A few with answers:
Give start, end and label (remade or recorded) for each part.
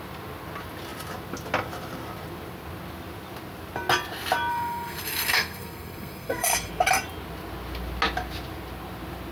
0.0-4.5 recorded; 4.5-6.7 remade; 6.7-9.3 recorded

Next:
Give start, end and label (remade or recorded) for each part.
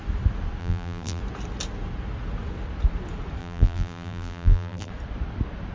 0.0-0.6 recorded; 0.6-1.2 remade; 1.2-3.4 recorded; 3.4-4.9 remade; 4.9-5.7 recorded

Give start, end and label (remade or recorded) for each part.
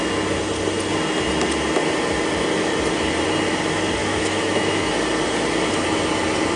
0.0-4.0 recorded; 4.0-4.9 remade; 4.9-6.6 recorded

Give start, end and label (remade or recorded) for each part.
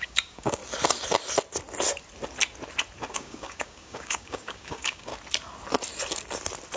0.0-0.6 remade; 0.6-3.1 recorded; 3.1-5.1 remade; 5.1-6.8 recorded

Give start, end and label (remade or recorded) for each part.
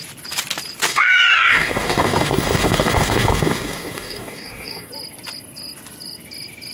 0.0-0.9 recorded; 0.9-4.9 remade; 4.9-6.7 recorded